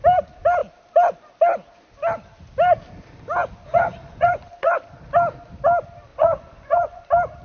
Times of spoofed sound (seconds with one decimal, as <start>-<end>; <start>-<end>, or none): 3.7-4.7; 6.1-7.0